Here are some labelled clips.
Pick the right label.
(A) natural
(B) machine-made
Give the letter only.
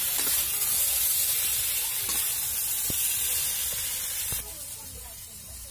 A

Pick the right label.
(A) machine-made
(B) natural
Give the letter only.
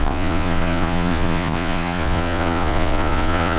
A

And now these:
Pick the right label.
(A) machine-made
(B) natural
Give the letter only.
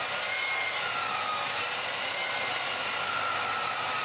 B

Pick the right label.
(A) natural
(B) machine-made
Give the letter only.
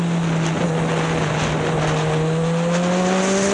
A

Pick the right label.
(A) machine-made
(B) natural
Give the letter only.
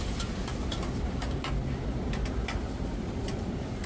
A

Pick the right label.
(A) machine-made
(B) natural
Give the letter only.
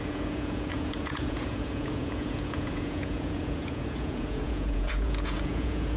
A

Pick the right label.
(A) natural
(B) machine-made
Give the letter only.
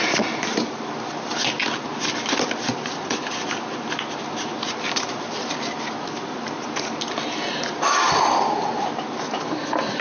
A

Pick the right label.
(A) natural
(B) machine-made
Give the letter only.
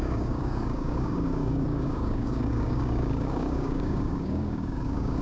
B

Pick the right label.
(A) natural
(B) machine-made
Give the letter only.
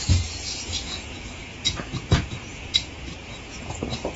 B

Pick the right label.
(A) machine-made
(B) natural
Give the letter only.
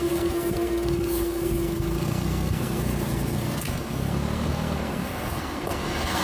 A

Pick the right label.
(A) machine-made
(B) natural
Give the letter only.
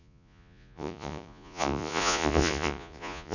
A